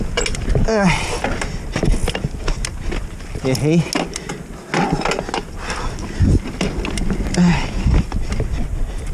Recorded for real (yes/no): yes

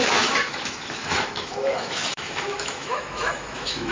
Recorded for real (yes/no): no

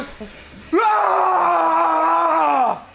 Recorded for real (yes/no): yes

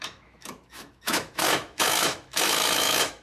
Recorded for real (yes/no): no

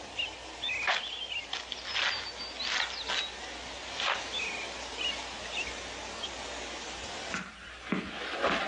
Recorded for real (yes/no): yes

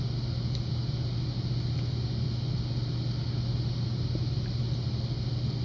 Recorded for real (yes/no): yes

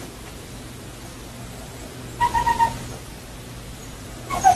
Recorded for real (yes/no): yes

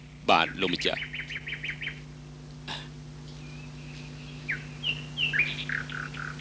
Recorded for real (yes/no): yes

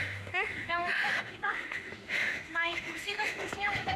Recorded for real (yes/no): no